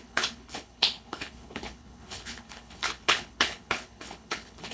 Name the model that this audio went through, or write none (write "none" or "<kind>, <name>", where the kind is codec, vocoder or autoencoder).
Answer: codec, HILCodec